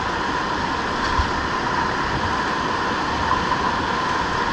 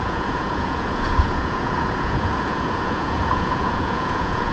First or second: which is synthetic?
second